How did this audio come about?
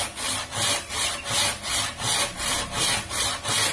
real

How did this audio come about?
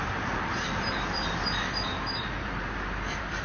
fake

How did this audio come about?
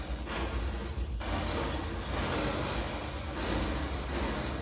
real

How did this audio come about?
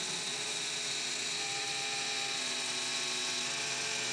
real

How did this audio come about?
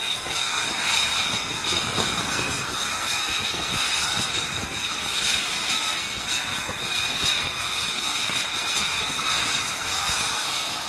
fake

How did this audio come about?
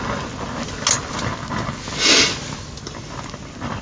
real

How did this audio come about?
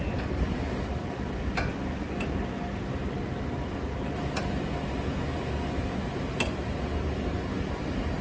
real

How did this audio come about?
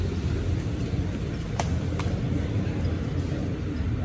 real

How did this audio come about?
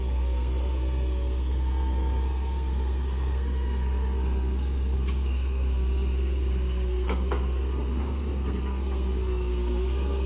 fake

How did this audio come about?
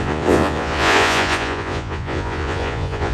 fake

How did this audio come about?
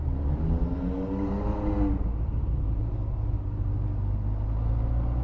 real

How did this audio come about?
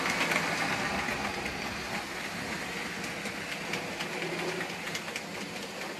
real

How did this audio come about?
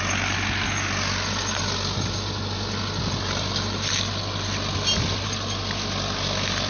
real